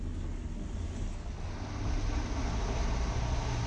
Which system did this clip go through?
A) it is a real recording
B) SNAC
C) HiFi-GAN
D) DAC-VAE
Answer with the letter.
A